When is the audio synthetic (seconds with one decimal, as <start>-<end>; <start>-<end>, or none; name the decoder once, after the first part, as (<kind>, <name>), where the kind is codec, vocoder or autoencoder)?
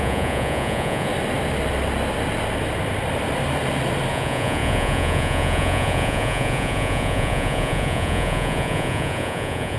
0.0-1.1 (vocoder, Vocos); 4.1-9.8